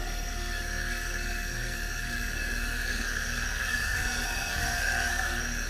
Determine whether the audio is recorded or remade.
remade